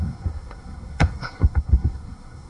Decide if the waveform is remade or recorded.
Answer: remade